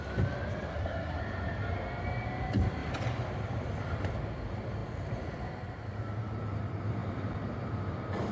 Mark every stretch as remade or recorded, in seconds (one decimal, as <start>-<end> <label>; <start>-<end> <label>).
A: 0.0-0.7 recorded; 0.7-1.2 remade; 1.2-8.3 recorded

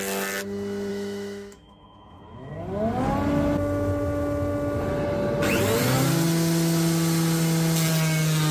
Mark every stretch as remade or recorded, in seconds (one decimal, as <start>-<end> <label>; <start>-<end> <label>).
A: 0.0-0.9 recorded; 0.9-2.5 remade; 2.5-8.5 recorded

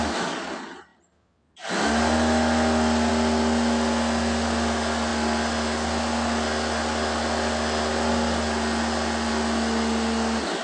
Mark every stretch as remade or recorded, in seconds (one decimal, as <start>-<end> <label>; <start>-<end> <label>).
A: 0.0-10.6 recorded